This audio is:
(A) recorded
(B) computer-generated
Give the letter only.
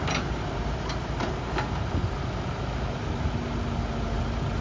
A